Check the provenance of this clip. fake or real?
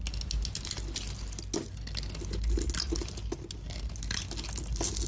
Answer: real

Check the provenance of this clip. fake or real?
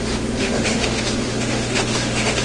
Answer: fake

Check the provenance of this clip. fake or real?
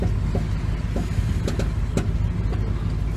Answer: real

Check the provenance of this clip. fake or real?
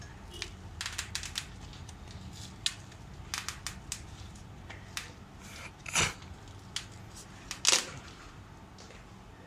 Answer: real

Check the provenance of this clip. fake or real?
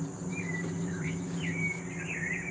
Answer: fake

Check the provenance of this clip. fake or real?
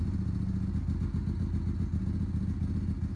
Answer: real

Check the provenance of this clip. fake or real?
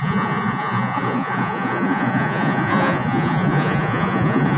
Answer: fake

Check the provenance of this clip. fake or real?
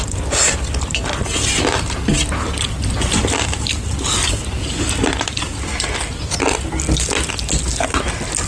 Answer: real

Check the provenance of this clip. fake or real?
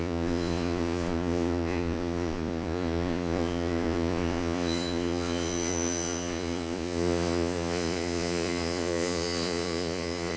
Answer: fake